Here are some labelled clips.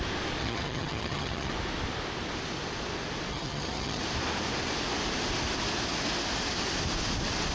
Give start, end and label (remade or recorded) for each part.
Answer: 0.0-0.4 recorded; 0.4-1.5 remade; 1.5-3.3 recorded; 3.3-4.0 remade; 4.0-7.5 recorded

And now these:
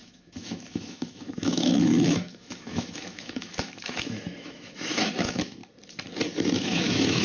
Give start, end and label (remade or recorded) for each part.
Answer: 0.0-5.6 remade; 5.6-6.6 recorded; 6.6-7.2 remade

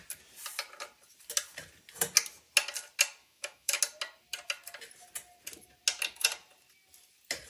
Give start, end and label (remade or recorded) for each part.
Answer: 0.0-3.2 recorded; 3.2-3.8 remade; 3.8-7.5 recorded